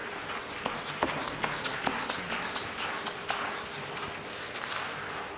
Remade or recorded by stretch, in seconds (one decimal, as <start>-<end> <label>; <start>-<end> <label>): 0.0-5.4 recorded